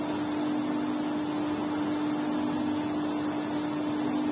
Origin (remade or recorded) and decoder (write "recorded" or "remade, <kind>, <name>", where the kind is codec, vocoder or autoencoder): recorded